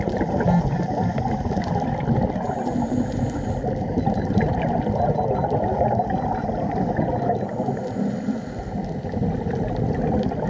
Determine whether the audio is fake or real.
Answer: real